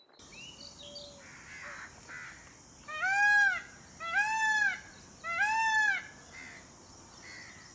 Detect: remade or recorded recorded